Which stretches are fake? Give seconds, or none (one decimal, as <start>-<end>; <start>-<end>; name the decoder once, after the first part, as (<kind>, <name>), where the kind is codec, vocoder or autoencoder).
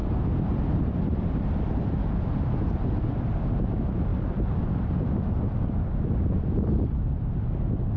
4.1-7.6 (vocoder, BigVGAN v2)